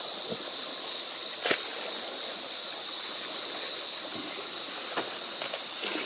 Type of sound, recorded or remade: recorded